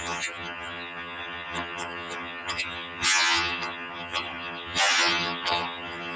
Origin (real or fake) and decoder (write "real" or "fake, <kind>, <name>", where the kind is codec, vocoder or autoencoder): fake, vocoder, HiFi-GAN